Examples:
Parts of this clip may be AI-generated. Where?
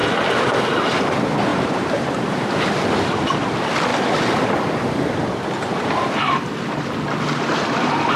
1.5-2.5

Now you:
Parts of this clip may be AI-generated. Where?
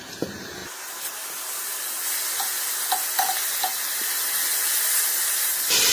0.6-1.3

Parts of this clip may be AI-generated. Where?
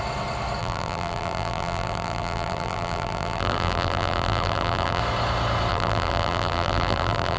0.6-5.0; 5.7-7.4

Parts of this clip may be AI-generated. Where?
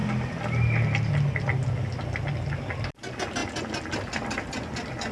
none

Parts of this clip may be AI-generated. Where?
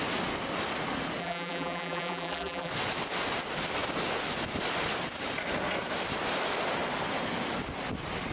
1.2-2.7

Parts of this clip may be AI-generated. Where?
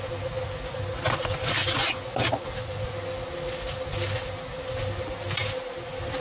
0.0-1.6; 4.8-6.2